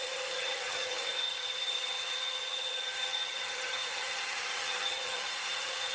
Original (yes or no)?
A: no